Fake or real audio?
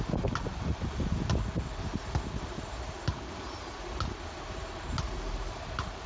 real